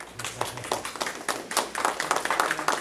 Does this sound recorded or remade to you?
recorded